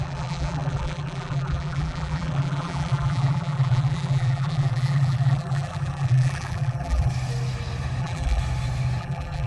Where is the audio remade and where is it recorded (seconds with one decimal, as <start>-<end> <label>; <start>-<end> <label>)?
0.0-7.1 remade; 7.1-8.0 recorded; 8.0-8.4 remade; 8.4-9.0 recorded; 9.0-9.5 remade

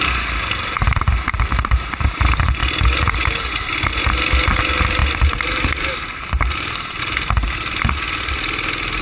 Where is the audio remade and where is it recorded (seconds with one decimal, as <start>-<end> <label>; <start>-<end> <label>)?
0.0-2.1 remade; 2.1-5.0 recorded; 5.0-7.0 remade; 7.0-9.0 recorded